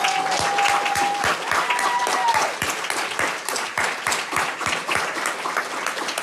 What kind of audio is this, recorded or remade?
recorded